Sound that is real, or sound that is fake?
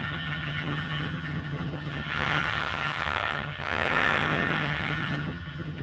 fake